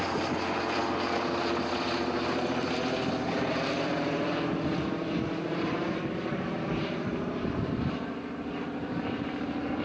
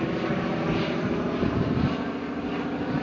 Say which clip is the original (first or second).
second